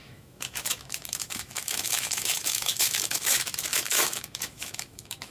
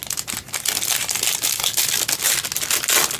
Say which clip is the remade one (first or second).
first